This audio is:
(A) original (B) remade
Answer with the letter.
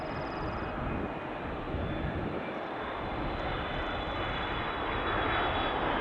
A